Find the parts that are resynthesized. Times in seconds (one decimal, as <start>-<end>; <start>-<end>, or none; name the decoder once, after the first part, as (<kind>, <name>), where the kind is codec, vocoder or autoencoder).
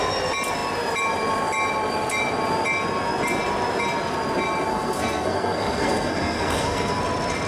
4.7-7.0 (codec, SNAC)